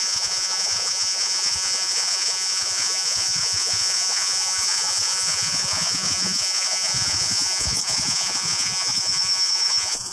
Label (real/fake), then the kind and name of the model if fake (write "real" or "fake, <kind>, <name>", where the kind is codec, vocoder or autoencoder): fake, vocoder, Vocos